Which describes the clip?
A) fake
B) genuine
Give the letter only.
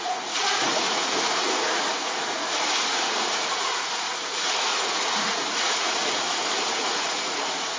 A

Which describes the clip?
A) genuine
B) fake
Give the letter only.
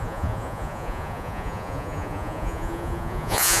B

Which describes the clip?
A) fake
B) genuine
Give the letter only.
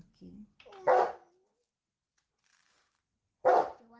B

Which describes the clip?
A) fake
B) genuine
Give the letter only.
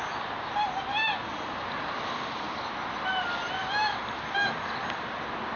B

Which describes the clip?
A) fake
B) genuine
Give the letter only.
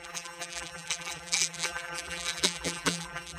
A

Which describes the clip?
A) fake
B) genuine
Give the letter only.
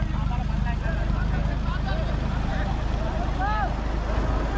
B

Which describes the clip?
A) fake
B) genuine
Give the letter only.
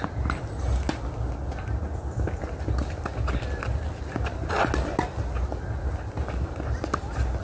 B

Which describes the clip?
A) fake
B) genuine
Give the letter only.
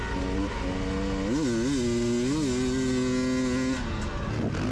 B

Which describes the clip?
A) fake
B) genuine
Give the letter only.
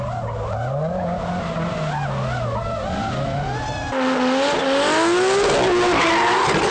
B